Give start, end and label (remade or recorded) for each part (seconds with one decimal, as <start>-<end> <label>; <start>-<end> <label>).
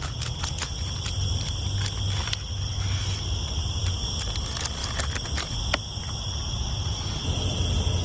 0.0-8.0 recorded